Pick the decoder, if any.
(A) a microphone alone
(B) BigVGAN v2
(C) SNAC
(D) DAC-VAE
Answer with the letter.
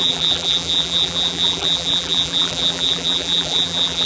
B